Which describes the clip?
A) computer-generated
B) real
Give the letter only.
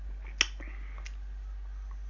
B